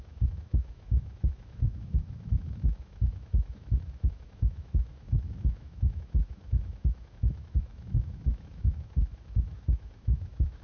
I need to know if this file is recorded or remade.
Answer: remade